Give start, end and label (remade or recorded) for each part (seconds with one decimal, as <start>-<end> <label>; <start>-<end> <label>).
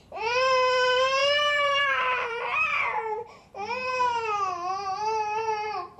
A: 0.0-1.2 recorded; 1.2-2.8 remade; 2.8-6.0 recorded